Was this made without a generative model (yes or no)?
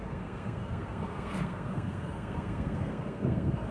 no